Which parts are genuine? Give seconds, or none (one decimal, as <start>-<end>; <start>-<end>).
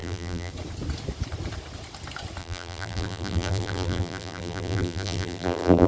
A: 0.5-2.4